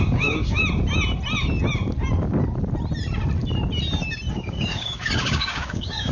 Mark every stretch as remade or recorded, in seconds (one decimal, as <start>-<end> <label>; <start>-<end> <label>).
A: 0.0-0.6 remade; 0.6-4.3 recorded; 4.3-6.1 remade